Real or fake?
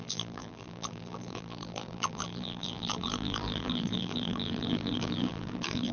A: fake